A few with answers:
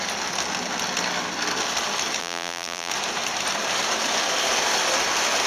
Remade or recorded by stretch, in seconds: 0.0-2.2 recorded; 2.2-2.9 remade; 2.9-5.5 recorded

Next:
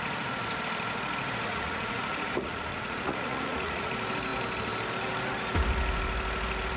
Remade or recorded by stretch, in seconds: 0.0-1.5 recorded; 1.5-3.9 remade; 3.9-6.8 recorded

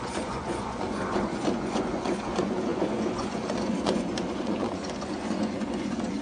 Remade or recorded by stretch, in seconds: 0.0-6.2 remade

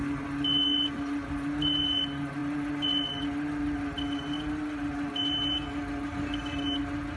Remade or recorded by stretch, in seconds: 0.0-7.2 recorded

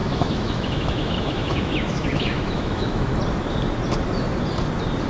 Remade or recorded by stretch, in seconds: 0.0-3.1 remade; 3.1-5.1 recorded

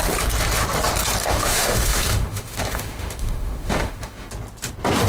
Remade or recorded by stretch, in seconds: 0.0-1.2 recorded; 1.2-4.3 remade; 4.3-5.1 recorded

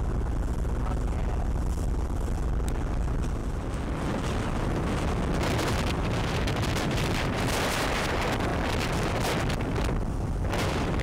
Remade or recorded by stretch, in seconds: 0.0-8.5 remade; 8.5-9.6 recorded; 9.6-11.0 remade

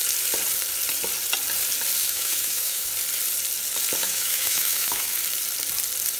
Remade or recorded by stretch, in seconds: 0.0-2.0 recorded; 2.0-2.9 remade; 2.9-4.0 recorded; 4.0-5.2 remade; 5.2-6.2 recorded